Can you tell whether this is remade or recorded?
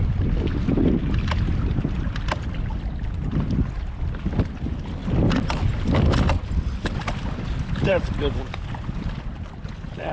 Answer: recorded